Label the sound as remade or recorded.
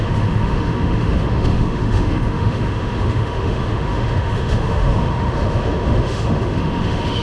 remade